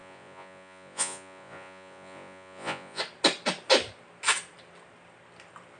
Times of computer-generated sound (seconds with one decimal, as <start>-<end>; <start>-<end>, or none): 0.0-3.0